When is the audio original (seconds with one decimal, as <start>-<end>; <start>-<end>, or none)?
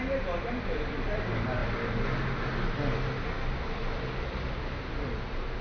0.0-5.6